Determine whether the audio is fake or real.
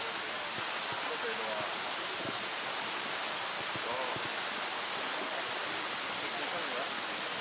real